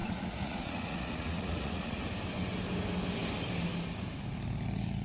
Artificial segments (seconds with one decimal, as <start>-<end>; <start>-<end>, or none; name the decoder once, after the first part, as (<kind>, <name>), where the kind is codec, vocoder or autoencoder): 0.0-2.0 (vocoder, Vocos)